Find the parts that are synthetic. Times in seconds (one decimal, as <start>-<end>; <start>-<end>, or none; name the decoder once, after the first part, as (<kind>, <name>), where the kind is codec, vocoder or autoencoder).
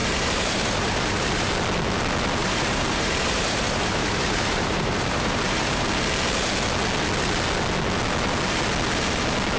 0.0-1.5 (vocoder, BigVGAN v2); 2.4-5.9